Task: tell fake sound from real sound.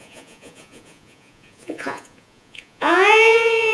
fake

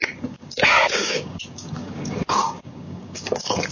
fake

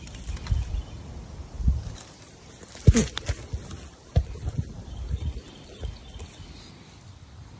real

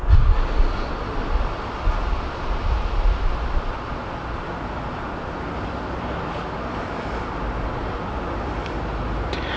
real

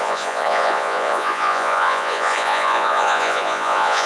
fake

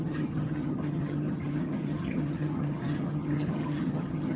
fake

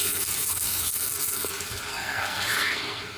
fake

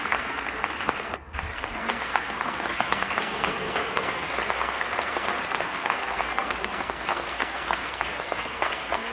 fake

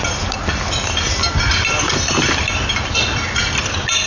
real